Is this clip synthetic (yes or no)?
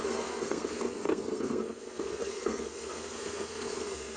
yes